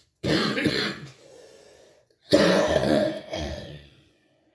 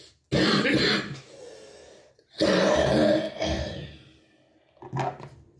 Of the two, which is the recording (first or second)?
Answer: second